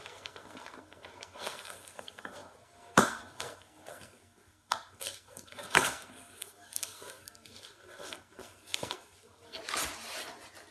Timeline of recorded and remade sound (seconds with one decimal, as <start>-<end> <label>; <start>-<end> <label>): 0.0-9.6 remade; 9.6-10.7 recorded